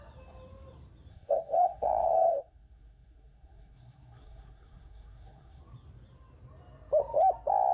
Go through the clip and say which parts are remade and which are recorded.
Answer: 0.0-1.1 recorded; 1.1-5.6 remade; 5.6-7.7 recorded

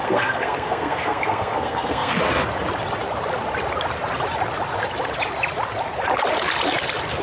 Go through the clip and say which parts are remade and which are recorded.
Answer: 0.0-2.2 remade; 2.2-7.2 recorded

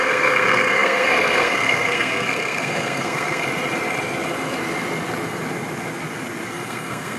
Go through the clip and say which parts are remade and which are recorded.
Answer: 0.0-3.5 remade; 3.5-6.5 recorded; 6.5-7.2 remade